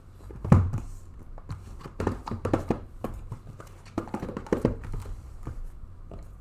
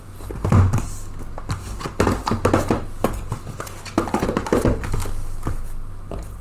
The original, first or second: second